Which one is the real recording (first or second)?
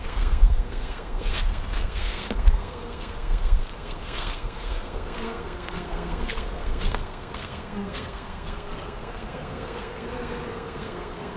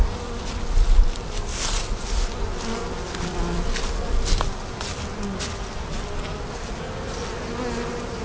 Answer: second